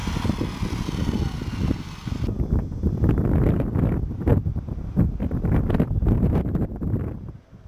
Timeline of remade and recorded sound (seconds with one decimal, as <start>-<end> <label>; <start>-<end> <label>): 0.0-7.7 recorded